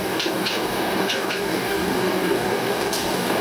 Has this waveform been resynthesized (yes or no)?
yes